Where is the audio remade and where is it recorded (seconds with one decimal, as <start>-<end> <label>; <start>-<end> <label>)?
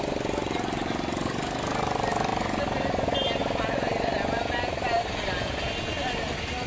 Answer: 0.0-6.7 recorded